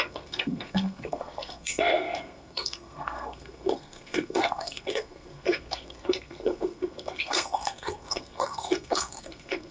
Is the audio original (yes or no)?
no